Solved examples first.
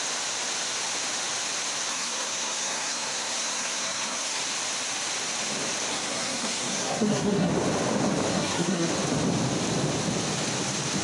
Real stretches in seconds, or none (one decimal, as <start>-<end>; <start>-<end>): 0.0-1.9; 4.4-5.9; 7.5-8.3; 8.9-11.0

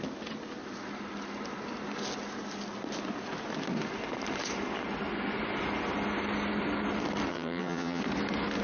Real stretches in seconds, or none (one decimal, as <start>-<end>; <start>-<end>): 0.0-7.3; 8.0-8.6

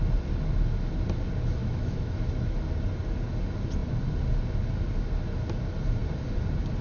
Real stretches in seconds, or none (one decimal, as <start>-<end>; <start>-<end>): 0.0-1.6; 2.6-6.8

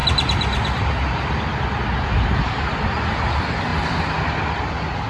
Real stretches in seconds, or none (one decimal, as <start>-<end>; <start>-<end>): 0.0-5.1

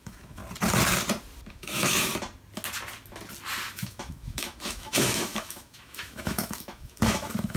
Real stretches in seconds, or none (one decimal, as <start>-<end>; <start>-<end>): 0.4-1.5; 2.1-3.7

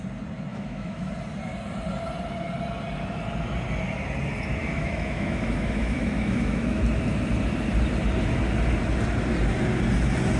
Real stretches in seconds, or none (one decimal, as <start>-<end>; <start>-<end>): 0.0-0.5; 1.1-4.6; 6.8-10.4

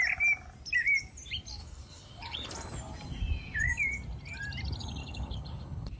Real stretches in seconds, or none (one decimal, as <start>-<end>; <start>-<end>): 0.0-1.6; 2.5-5.0